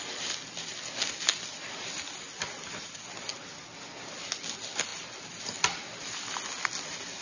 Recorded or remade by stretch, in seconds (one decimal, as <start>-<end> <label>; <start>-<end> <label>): 0.0-7.2 recorded